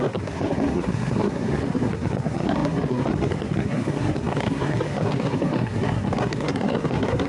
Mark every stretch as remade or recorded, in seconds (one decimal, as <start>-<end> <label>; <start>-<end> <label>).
0.0-7.3 remade